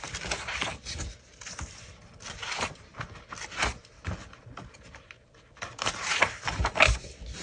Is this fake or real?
real